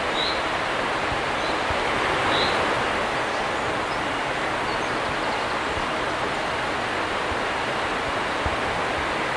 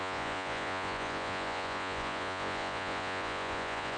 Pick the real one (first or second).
first